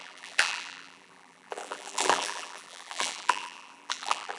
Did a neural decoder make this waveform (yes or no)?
yes